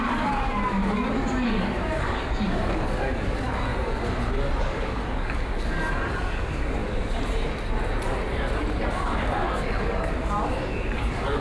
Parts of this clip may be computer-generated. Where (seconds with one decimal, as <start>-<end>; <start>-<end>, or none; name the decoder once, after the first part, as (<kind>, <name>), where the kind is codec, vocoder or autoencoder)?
0.0-3.7 (codec, DAC); 4.6-6.8; 9.2-11.4